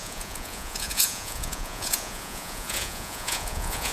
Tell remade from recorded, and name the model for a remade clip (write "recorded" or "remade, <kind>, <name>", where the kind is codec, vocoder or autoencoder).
remade, vocoder, Vocos